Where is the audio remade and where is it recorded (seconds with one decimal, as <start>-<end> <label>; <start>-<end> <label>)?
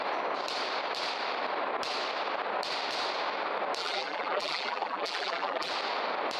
0.0-3.8 recorded; 3.8-5.7 remade; 5.7-6.4 recorded